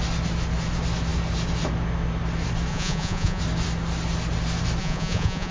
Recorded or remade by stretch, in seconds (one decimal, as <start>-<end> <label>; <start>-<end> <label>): 0.0-2.7 recorded; 2.7-3.4 remade; 3.4-4.8 recorded; 4.8-5.5 remade